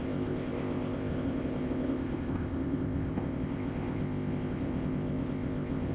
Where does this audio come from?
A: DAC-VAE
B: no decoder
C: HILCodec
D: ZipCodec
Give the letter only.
D